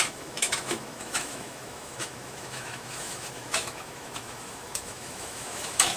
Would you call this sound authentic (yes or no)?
no